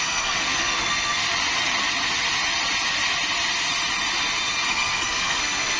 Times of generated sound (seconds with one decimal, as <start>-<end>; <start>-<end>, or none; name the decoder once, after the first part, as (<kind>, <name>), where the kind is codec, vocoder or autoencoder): 0.0-1.2 (codec, SNAC); 4.7-5.8